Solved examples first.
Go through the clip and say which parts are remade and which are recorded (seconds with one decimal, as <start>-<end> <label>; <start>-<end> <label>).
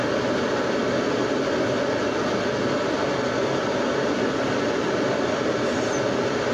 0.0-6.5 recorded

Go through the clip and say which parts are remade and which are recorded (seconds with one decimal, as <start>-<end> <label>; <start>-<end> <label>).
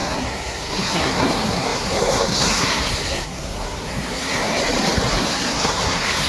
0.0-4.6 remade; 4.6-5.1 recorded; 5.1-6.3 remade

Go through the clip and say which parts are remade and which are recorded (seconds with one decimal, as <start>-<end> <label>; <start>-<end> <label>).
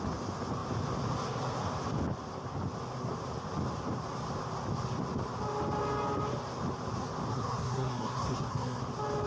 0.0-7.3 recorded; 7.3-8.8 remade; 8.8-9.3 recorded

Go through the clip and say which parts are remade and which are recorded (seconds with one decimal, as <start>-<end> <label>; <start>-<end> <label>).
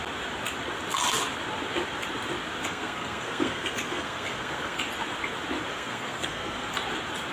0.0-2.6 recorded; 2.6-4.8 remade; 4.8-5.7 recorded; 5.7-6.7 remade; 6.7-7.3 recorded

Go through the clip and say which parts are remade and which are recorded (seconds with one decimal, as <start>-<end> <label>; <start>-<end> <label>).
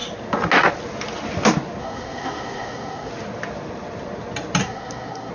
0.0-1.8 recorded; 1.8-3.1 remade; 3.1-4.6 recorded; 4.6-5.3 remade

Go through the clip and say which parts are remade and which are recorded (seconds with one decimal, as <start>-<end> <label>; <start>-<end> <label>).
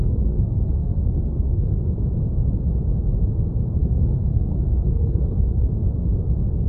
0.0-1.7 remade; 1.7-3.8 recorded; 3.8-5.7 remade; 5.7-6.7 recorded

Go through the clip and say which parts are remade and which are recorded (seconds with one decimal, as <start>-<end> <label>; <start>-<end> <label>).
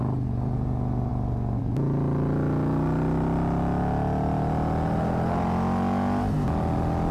0.0-7.1 recorded